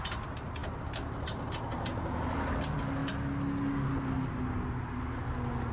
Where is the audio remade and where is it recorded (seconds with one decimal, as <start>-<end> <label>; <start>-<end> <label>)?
0.0-5.7 recorded